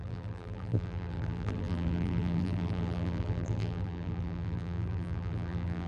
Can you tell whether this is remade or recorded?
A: remade